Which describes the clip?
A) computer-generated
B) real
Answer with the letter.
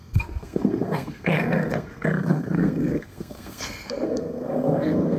A